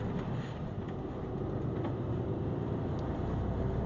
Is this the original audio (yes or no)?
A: yes